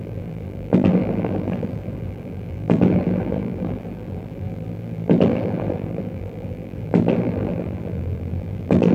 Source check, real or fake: fake